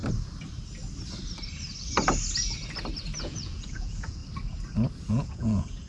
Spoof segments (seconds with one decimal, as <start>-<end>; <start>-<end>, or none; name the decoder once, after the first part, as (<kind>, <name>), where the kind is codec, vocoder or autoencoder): 3.2-4.2 (vocoder, Vocos); 5.1-5.9